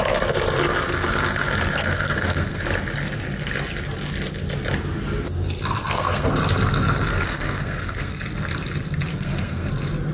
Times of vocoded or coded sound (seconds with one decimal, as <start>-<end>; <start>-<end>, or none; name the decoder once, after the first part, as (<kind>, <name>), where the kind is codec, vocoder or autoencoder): 1.9-2.6 (codec, SNAC); 5.8-6.3; 7.1-8.1; 9.1-9.7